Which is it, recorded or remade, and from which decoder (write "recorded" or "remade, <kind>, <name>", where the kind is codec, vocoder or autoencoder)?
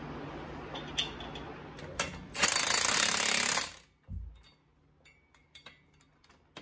recorded